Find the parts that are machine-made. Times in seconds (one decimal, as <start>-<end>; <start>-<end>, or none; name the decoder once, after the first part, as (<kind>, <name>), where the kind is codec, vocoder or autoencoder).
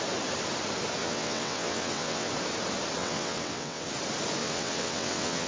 1.0-2.3 (vocoder, WaveNeXt); 3.0-3.9; 4.4-5.5